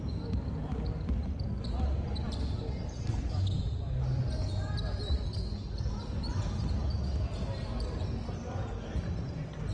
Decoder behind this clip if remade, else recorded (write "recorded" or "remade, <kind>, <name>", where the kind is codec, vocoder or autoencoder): recorded